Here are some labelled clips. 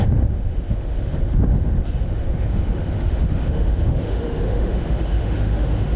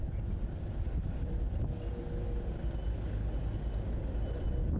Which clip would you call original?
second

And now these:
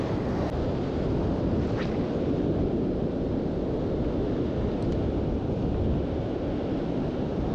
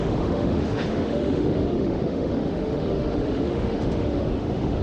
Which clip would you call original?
first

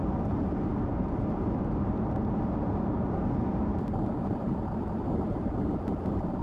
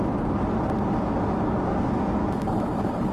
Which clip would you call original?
second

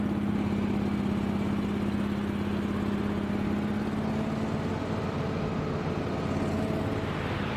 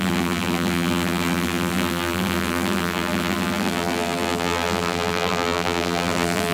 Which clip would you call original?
first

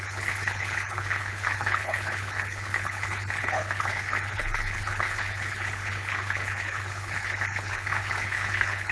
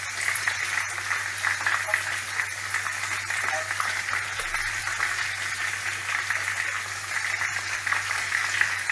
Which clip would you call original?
second